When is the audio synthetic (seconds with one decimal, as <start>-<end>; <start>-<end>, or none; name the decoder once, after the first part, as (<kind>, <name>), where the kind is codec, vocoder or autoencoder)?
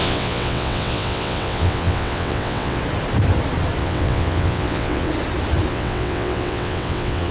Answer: 0.0-2.8 (vocoder, WaveNeXt); 3.8-5.1; 5.7-7.3